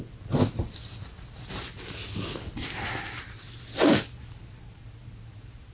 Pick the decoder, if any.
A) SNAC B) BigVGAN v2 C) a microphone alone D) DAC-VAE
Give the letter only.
C